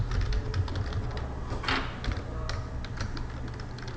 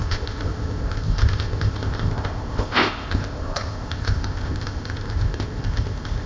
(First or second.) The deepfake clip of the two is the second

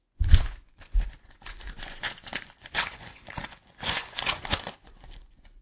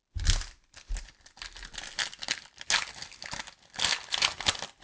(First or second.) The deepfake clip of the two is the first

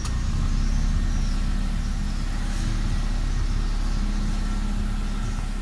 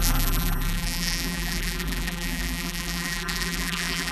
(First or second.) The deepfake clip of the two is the second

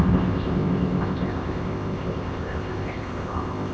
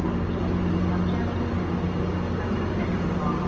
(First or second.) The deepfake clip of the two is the first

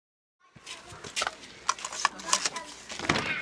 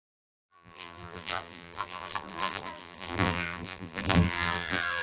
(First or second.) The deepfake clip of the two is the second